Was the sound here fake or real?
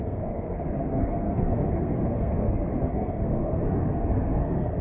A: fake